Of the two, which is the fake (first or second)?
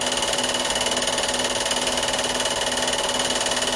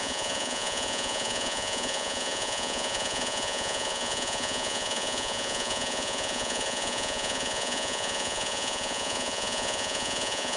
second